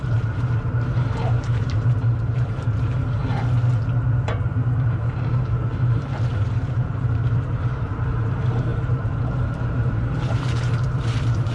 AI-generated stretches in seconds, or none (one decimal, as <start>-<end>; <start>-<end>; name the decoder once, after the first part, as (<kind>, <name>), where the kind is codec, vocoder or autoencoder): 0.0-3.2 (vocoder, BigVGAN v2); 4.1-11.5